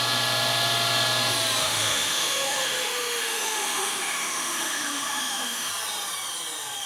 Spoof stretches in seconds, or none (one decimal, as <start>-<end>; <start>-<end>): 1.6-5.7